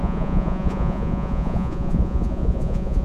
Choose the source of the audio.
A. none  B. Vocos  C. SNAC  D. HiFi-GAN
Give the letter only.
B